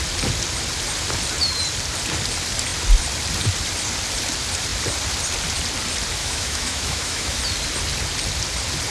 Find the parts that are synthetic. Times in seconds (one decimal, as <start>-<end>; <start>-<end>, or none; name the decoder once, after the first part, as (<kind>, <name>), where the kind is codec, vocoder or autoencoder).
6.2-7.4 (autoencoder, DAC-VAE)